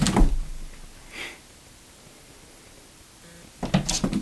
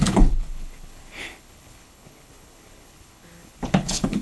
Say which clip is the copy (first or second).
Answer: second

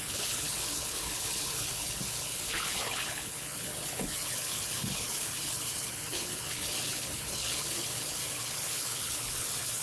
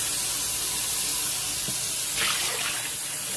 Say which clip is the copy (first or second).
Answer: first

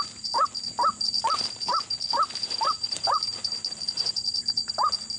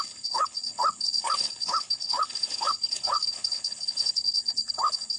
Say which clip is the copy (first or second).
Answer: second